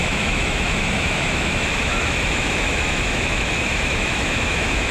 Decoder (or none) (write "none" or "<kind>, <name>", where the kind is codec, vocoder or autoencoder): autoencoder, DAC-VAE